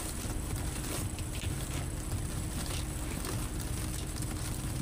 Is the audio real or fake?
fake